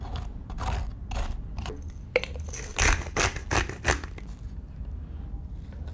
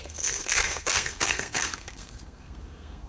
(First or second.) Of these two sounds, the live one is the first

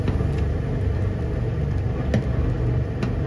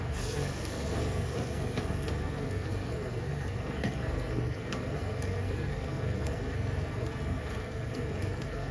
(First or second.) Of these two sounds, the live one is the first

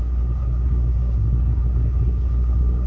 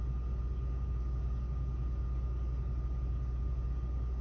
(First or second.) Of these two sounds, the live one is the second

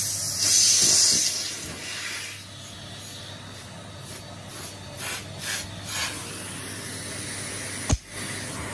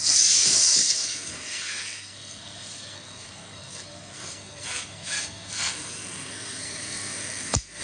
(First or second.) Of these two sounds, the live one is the first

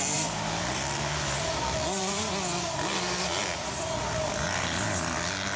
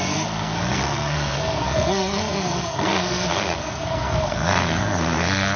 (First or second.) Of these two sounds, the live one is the first